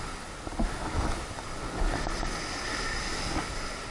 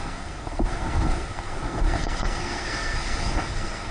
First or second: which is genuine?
first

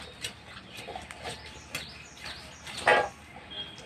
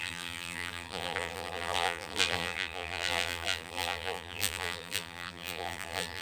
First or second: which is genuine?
first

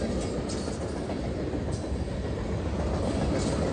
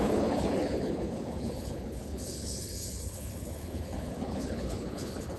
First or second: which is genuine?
first